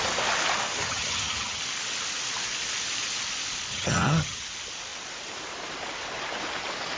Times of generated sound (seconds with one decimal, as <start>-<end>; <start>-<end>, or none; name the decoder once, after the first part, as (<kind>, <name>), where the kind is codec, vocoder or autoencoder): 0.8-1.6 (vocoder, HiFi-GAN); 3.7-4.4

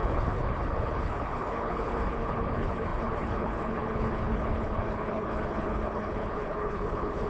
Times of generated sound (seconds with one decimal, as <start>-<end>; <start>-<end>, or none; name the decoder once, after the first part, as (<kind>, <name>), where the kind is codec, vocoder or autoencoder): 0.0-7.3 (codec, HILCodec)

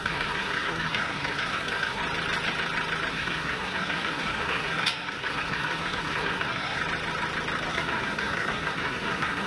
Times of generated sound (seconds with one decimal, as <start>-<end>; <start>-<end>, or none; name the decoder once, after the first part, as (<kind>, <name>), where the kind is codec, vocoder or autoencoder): 0.0-2.0 (codec, SNAC); 3.1-6.8; 7.7-9.5

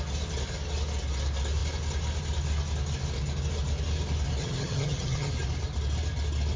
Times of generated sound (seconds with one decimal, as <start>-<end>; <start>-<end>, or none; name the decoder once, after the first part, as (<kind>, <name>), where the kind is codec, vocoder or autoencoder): 4.4-5.3 (vocoder, HiFi-GAN)

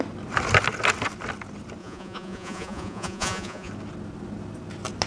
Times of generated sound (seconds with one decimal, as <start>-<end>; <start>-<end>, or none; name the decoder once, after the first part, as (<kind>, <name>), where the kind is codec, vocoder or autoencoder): 1.8-3.7 (vocoder, Vocos)

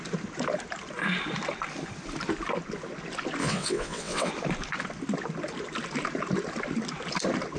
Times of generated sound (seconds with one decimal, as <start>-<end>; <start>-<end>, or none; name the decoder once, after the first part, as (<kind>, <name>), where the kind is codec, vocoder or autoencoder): 3.4-4.3 (vocoder, WaveNeXt)